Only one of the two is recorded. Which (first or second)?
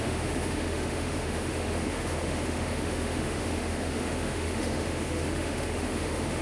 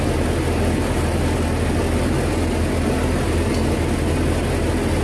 second